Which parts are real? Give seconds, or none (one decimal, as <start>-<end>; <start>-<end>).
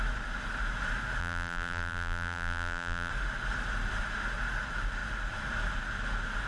0.0-1.2; 3.1-6.5